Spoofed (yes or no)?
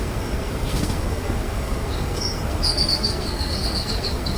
yes